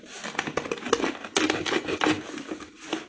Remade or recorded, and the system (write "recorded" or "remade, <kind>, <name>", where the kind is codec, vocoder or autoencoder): recorded